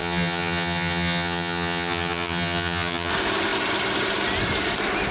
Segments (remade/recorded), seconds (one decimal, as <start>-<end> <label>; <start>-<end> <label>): 0.0-3.1 remade; 3.1-5.1 recorded